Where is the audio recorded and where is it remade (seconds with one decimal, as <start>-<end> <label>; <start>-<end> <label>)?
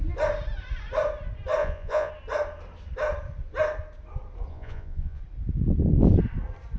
0.0-1.6 recorded; 1.6-2.1 remade; 2.1-4.5 recorded; 4.5-5.2 remade; 5.2-6.8 recorded